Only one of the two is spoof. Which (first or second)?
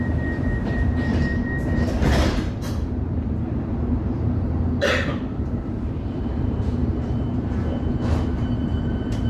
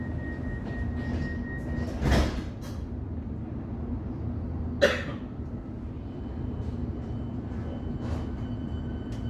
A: first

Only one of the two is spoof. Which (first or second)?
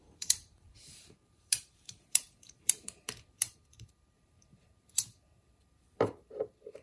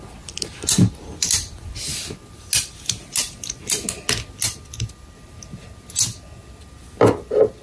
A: first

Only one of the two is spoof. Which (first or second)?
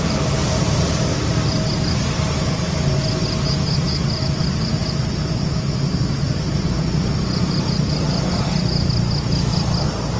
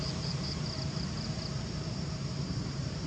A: second